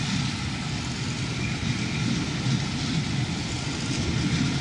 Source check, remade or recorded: recorded